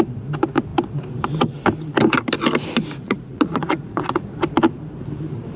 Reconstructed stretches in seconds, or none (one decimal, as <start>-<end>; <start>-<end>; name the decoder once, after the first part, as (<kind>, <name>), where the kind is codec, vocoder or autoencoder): 3.0-4.3 (vocoder, Vocos)